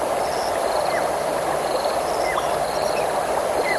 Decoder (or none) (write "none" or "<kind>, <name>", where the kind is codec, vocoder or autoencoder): vocoder, BigVGAN v2